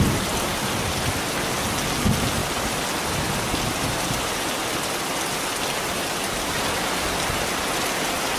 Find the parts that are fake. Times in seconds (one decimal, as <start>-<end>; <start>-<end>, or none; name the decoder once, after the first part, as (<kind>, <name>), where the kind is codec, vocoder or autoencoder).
0.5-1.6 (vocoder, BigVGAN v2); 2.4-6.6